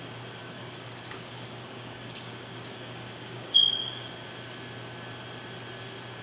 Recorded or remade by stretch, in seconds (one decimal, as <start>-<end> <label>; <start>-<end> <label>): 0.0-0.4 recorded; 0.4-4.1 remade; 4.1-6.2 recorded